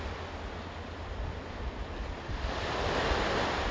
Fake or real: real